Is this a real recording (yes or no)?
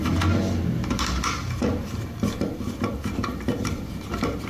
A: yes